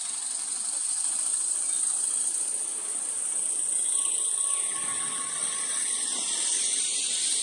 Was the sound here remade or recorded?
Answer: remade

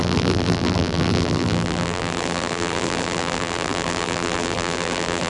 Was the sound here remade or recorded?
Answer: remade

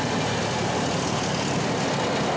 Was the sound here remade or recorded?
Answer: recorded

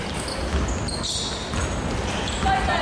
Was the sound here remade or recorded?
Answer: recorded